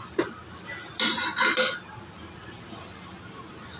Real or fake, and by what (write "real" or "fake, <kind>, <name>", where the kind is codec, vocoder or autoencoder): real